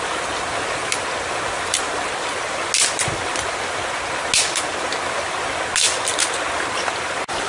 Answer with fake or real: real